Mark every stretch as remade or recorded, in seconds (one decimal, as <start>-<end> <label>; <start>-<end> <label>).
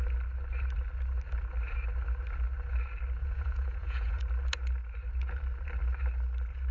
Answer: 0.0-3.2 recorded; 3.2-4.2 remade; 4.2-6.7 recorded